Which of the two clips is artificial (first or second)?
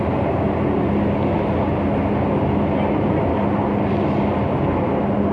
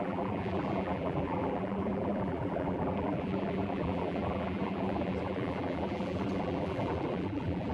second